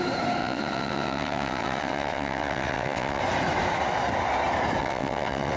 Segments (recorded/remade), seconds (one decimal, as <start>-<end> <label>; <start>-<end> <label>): 0.0-0.4 recorded; 0.4-3.2 remade; 3.2-4.8 recorded; 4.8-5.6 remade